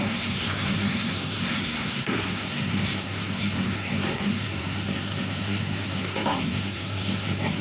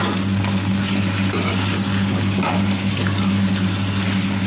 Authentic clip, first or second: second